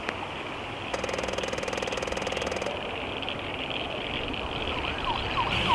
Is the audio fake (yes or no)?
no